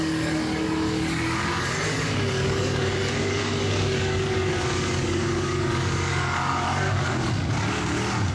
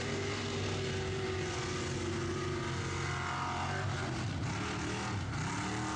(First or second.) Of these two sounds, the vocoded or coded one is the first